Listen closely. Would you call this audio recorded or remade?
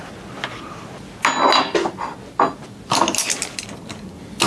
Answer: recorded